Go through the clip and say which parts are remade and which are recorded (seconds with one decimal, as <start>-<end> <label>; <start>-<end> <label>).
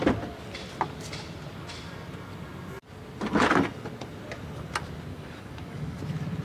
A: 0.0-5.1 recorded; 5.1-6.0 remade; 6.0-6.4 recorded